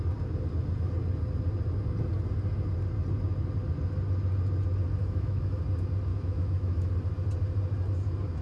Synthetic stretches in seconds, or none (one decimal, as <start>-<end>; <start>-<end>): 5.0-5.6; 6.1-6.9